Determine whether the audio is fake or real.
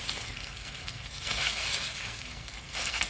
fake